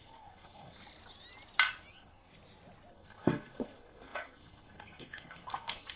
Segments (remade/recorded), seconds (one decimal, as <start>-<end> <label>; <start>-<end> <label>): 0.0-0.8 remade; 0.8-1.9 recorded; 1.9-2.3 remade; 2.3-2.9 recorded; 2.9-6.0 remade

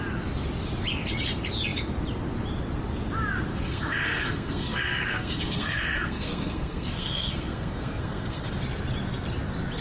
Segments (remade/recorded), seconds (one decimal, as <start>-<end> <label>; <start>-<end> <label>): 0.0-3.5 recorded; 3.5-8.5 remade; 8.5-9.8 recorded

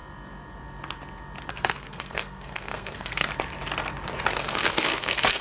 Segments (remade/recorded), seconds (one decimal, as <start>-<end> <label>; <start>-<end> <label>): 0.0-1.5 recorded; 1.5-3.3 remade; 3.3-4.3 recorded; 4.3-5.4 remade